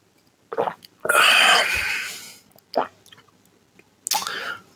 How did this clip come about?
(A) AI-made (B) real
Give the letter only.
B